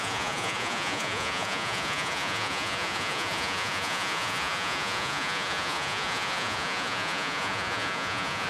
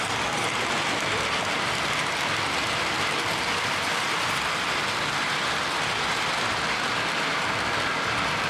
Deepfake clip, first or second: first